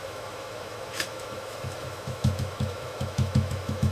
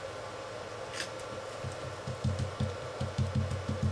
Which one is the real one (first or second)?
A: second